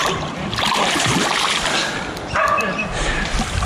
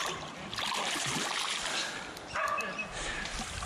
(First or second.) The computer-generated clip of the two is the first